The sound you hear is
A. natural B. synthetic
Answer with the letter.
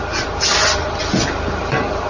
A